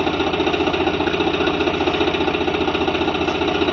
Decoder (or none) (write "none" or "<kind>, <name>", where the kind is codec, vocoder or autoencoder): none